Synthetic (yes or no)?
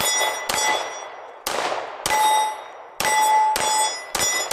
no